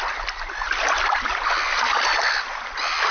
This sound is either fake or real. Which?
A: real